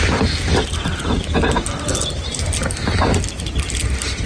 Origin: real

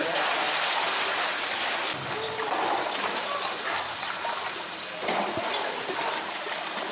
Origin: real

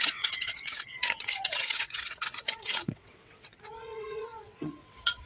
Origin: fake